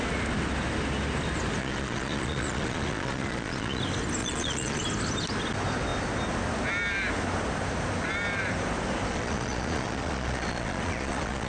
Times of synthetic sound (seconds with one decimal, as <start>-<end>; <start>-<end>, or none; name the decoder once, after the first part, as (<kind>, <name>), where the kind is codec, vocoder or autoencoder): 1.6-3.8 (vocoder, Vocos); 4.2-4.8; 9.1-11.5